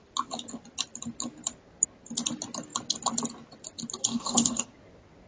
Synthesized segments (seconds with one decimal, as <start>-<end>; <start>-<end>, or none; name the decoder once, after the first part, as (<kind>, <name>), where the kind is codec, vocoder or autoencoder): 4.0-4.7 (codec, DAC)